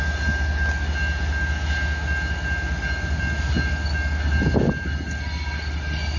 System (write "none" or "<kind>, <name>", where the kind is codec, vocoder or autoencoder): none